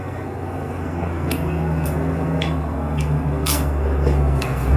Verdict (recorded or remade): remade